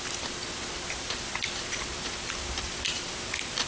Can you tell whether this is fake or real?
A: fake